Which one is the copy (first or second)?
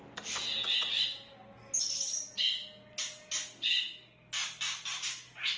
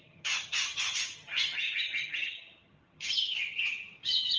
second